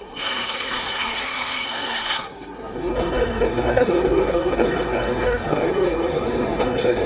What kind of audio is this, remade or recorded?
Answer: remade